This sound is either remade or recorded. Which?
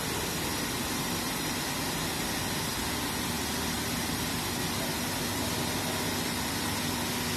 recorded